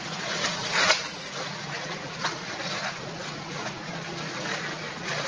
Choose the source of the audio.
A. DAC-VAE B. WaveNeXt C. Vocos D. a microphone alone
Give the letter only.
C